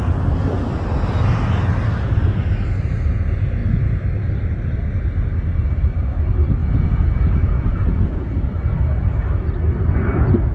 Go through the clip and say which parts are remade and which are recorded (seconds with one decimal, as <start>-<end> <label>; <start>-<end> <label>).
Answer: 0.0-6.6 recorded; 6.6-8.4 remade; 8.4-10.5 recorded